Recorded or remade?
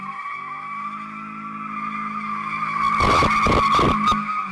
recorded